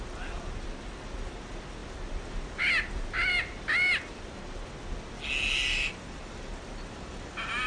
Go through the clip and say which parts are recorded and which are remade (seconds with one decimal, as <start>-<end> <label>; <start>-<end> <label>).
0.0-7.7 recorded